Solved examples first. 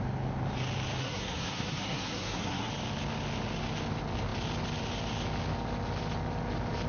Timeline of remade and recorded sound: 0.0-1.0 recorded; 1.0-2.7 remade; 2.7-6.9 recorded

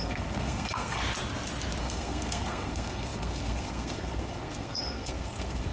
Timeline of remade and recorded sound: 0.0-1.0 remade; 1.0-1.8 recorded; 1.8-5.7 remade

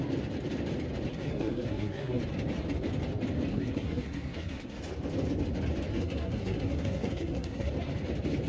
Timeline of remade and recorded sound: 0.0-1.1 recorded; 1.1-2.2 remade; 2.2-3.5 recorded; 3.5-4.8 remade; 4.8-5.9 recorded; 5.9-7.7 remade; 7.7-8.5 recorded

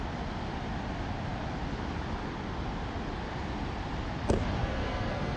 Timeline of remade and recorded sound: 0.0-4.6 recorded; 4.6-5.4 remade